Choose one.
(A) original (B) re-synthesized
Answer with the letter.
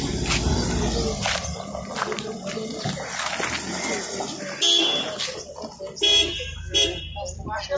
A